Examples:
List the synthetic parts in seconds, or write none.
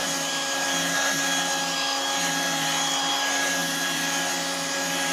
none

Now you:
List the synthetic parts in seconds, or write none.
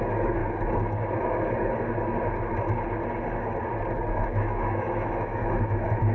0.0-0.4 (autoencoder, DAC-VAE); 4.1-6.1